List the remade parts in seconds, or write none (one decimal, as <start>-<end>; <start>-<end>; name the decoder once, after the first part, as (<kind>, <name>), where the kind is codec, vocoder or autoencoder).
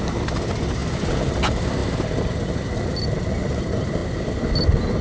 none